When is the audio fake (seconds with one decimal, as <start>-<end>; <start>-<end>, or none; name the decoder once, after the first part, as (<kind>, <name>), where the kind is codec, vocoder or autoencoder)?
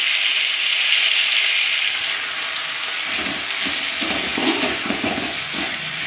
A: 4.3-6.1 (vocoder, Vocos)